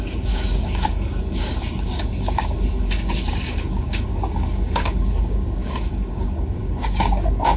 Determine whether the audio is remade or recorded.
remade